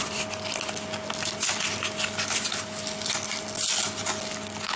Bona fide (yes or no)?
yes